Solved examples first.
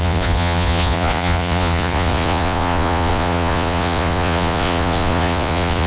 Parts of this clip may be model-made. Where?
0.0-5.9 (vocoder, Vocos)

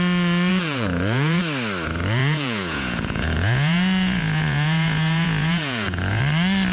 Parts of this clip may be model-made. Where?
0.5-1.4 (vocoder, Vocos); 2.2-6.2